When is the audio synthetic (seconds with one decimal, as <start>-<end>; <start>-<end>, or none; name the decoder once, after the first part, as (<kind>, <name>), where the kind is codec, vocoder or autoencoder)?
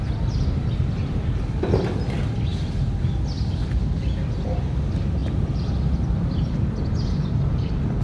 none